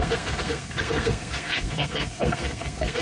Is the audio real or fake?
fake